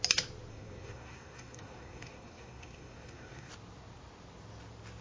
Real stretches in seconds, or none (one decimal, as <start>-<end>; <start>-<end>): 0.0-0.5; 3.5-5.0